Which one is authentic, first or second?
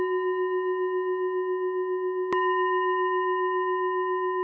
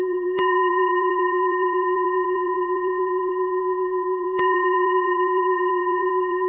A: first